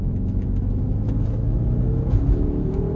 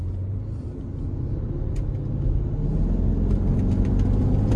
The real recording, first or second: second